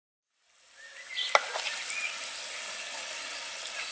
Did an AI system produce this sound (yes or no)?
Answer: no